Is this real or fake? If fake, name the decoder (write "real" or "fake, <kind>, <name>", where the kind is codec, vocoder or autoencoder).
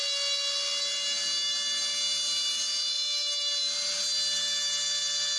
real